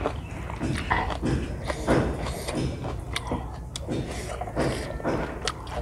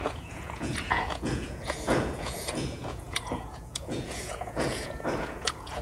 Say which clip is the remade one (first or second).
second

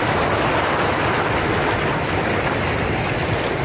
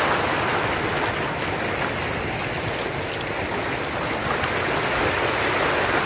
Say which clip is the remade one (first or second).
first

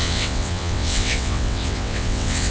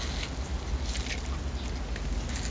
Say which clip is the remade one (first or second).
first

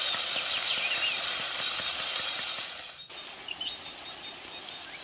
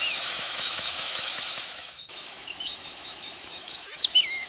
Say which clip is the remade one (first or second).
second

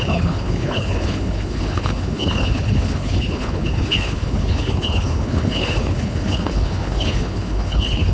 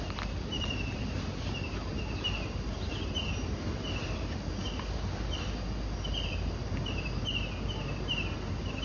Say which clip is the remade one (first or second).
first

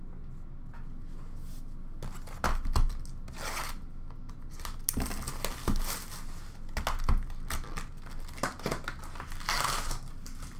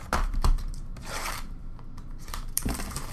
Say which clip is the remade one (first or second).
second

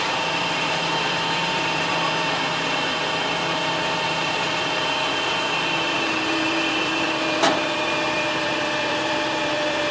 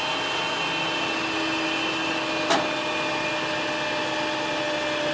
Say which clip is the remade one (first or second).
first